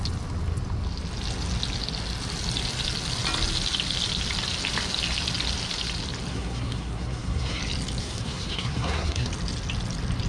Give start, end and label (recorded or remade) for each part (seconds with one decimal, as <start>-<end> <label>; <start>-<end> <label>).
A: 0.0-6.3 recorded; 6.3-7.6 remade; 7.6-8.0 recorded; 8.0-9.3 remade; 9.3-10.3 recorded